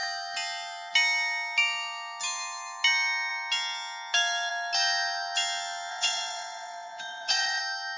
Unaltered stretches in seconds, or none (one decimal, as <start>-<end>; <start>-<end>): 0.0-5.9; 7.6-8.0